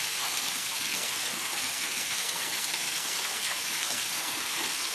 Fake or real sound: fake